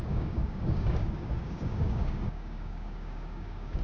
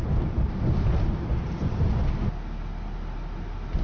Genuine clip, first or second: second